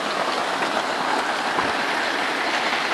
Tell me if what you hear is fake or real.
real